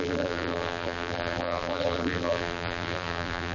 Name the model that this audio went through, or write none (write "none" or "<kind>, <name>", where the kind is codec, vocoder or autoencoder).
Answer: vocoder, BigVGAN v2